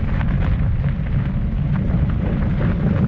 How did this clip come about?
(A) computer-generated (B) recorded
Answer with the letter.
B